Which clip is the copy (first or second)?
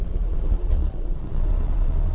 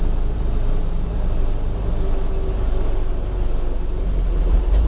first